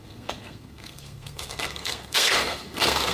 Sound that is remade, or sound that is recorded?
remade